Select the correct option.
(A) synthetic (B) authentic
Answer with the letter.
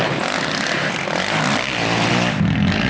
B